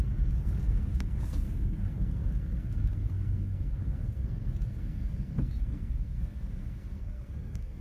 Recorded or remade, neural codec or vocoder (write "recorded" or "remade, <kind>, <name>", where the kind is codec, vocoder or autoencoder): remade, codec, SNAC